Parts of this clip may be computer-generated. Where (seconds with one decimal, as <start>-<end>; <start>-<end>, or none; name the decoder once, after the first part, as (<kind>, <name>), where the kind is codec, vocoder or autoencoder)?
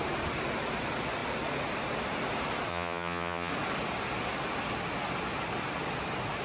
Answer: 2.7-3.5 (vocoder, HiFi-GAN)